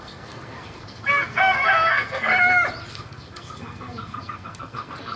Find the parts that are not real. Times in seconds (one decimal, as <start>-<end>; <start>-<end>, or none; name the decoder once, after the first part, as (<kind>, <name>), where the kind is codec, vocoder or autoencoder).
0.0-2.3 (codec, SNAC); 2.9-5.2

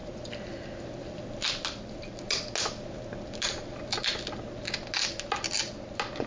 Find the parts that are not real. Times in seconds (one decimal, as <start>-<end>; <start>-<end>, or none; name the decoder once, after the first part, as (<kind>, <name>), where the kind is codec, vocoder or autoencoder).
none

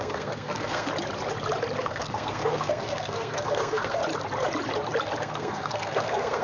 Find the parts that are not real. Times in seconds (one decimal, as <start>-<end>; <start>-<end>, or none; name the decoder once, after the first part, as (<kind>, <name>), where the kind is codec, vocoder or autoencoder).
0.0-0.9 (codec, SNAC); 1.8-4.0; 5.2-6.4

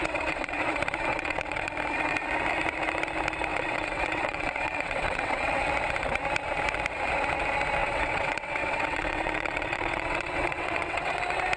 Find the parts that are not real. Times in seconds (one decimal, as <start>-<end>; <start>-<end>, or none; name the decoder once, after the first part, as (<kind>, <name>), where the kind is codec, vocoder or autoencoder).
0.0-0.7 (vocoder, WaveNeXt); 1.1-1.7; 3.5-5.7; 7.8-11.2

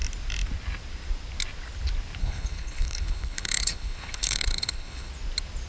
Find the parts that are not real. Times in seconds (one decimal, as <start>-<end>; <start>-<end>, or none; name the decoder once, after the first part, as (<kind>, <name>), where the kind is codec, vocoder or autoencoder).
2.2-5.1 (codec, HILCodec)

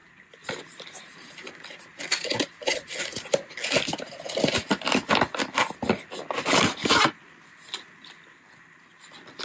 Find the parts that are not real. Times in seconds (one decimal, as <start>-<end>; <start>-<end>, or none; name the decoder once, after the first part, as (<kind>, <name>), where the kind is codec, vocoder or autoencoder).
none

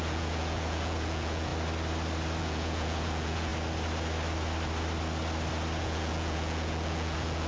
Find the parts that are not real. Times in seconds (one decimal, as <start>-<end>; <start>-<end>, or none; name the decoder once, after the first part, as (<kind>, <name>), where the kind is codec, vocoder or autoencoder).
0.0-1.5 (vocoder, Vocos); 2.4-3.5; 5.8-7.5